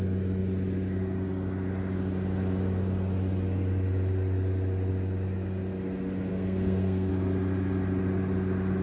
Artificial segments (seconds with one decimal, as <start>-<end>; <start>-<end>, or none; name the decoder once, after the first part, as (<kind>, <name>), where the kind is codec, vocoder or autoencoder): 6.3-7.1 (codec, SNAC)